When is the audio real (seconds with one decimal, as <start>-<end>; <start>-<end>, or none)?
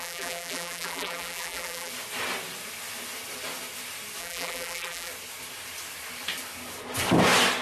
1.9-4.2; 5.1-7.6